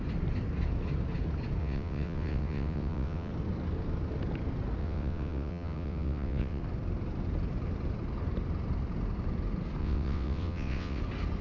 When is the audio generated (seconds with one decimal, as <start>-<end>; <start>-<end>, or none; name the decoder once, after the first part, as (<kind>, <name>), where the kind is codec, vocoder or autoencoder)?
1.6-3.3 (vocoder, WaveNeXt); 4.8-6.6; 9.8-11.0